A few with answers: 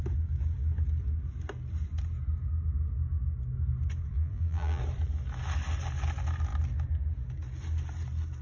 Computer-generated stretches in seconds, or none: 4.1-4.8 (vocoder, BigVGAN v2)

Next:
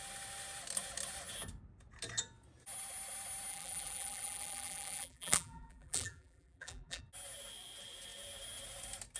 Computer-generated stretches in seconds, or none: 3.5-7.0 (vocoder, BigVGAN v2)

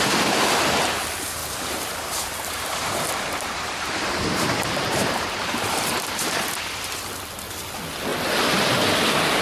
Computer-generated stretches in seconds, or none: 1.4-6.1 (vocoder, BigVGAN v2)

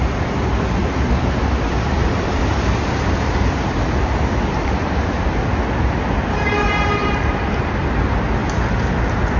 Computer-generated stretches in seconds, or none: 0.8-5.4 (vocoder, BigVGAN v2); 7.0-7.6

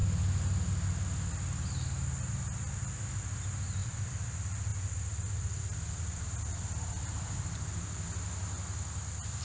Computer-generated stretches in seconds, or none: 3.8-4.3 (vocoder, BigVGAN v2); 4.7-6.2

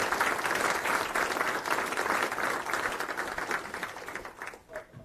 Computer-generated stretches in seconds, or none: 0.0-2.3 (vocoder, BigVGAN v2)